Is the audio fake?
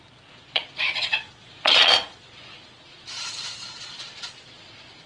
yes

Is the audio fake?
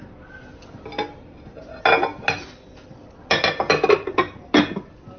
no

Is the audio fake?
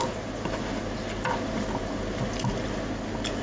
no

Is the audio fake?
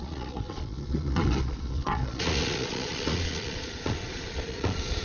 yes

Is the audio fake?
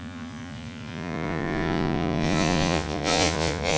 yes